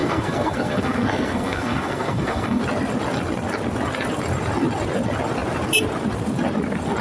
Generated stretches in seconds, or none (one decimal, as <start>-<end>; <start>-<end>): 0.0-2.6